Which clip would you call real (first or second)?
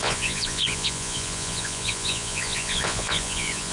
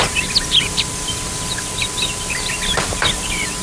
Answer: second